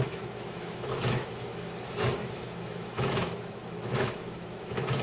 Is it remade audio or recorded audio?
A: remade